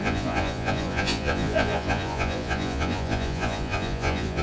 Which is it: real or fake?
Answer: fake